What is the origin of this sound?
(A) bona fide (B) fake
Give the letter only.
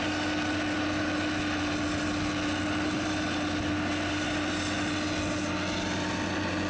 A